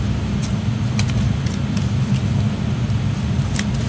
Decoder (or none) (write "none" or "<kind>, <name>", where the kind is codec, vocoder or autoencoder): none